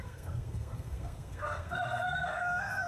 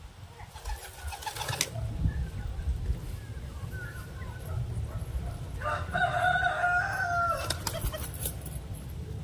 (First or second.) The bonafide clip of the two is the second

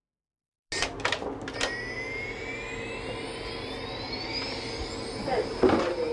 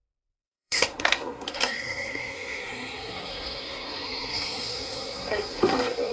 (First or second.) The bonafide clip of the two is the first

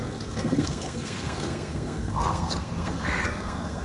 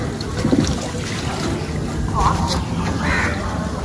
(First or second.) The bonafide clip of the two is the second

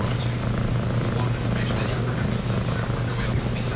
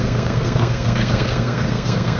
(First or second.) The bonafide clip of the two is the first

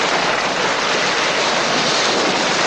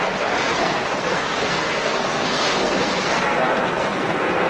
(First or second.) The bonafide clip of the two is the first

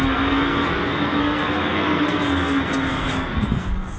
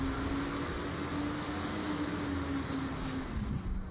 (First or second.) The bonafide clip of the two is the second